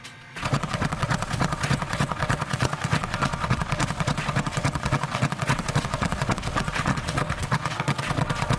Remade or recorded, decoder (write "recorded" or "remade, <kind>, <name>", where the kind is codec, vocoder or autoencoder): remade, vocoder, WaveNeXt